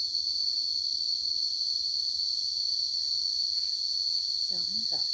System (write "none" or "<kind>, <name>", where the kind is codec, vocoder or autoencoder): none